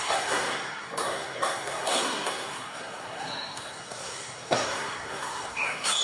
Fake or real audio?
fake